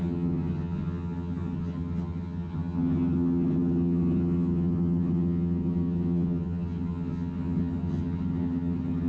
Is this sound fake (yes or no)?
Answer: yes